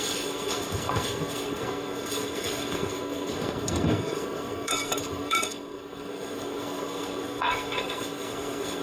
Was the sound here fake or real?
fake